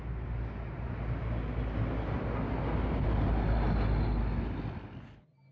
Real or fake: real